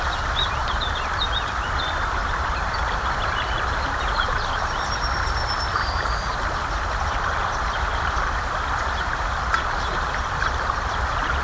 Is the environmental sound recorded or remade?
remade